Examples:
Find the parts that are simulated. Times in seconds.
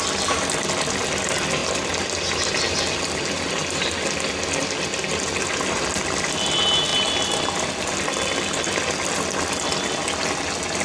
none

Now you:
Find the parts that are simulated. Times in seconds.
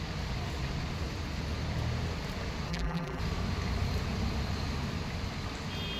2.7-3.2 (vocoder, BigVGAN v2)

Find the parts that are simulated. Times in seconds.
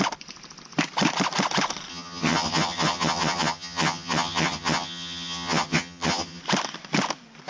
1.9-6.4 (vocoder, HiFi-GAN)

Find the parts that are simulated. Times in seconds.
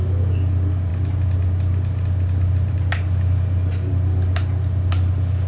none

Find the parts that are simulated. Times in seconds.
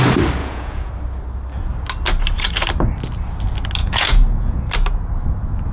0.4-0.9 (vocoder, Vocos); 3.8-4.6